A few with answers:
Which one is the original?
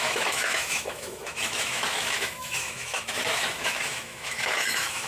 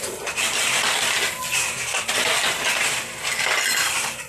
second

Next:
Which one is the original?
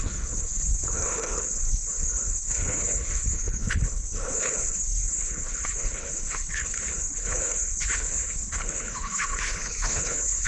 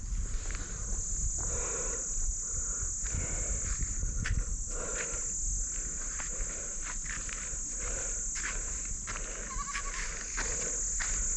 second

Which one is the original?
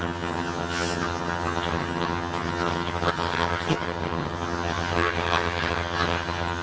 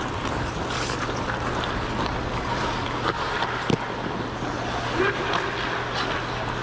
second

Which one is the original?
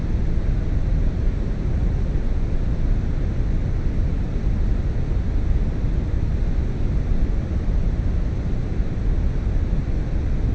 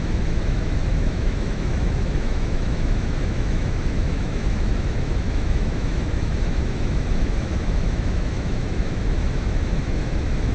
first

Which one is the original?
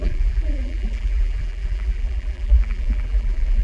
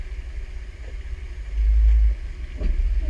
second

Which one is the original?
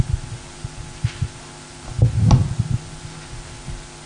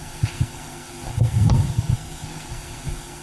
first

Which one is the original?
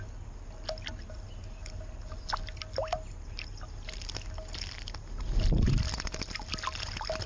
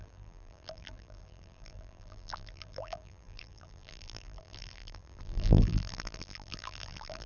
first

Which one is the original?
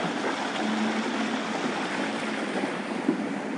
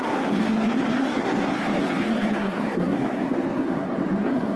first